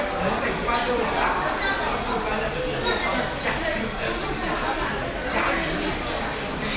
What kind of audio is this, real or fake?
real